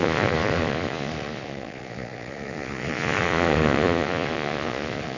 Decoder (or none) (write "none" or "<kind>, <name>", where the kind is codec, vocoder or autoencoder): vocoder, Vocos